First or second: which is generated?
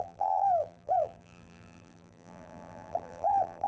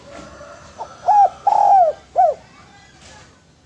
first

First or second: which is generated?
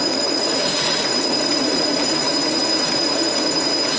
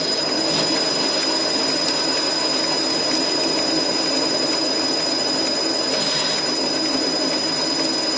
first